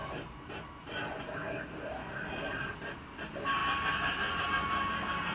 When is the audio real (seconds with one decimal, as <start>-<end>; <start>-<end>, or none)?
0.0-5.3